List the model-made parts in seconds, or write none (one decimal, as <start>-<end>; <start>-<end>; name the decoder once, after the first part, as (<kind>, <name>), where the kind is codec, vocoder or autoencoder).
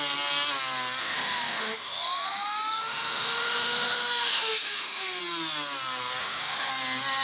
1.0-5.2 (autoencoder, DAC-VAE); 6.2-6.7